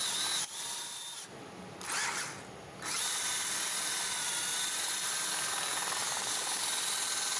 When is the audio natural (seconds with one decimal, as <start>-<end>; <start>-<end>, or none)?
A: 0.0-6.0; 6.6-7.4